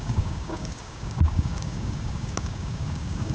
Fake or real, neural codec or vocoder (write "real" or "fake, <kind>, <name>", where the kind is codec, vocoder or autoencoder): fake, codec, DAC